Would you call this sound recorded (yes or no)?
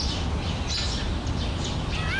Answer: yes